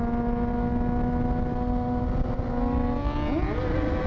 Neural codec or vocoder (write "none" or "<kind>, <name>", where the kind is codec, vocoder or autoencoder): none